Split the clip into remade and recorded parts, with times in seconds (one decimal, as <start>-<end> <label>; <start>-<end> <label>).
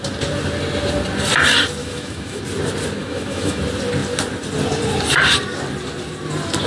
0.0-1.8 recorded; 1.8-2.4 remade; 2.4-3.0 recorded; 3.0-3.6 remade; 3.6-6.7 recorded